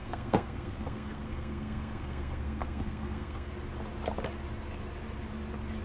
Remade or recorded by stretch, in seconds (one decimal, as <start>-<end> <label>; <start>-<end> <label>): 0.0-3.5 remade; 3.5-5.8 recorded